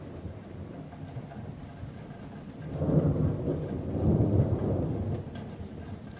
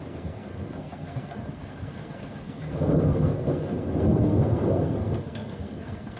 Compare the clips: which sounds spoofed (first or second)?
second